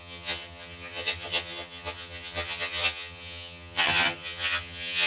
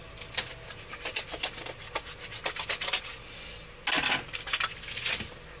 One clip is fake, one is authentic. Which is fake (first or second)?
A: first